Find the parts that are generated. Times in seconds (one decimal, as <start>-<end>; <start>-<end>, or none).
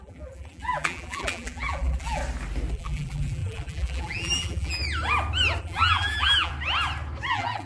0.0-2.2; 2.7-4.8; 5.6-6.5; 7.3-7.7